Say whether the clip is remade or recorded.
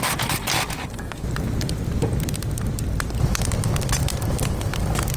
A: recorded